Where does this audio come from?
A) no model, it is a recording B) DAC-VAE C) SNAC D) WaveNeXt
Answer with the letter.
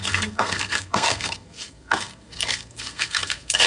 C